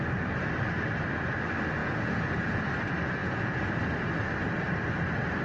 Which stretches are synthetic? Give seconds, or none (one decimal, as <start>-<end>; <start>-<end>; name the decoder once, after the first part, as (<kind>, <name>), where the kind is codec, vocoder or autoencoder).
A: 1.8-2.6 (vocoder, Vocos); 3.2-3.7